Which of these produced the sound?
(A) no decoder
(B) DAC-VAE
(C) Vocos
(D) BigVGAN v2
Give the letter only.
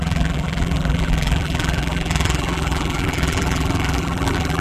D